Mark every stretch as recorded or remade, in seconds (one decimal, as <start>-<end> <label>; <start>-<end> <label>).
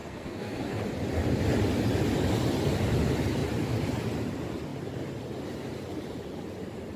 0.0-0.8 remade; 0.8-7.0 recorded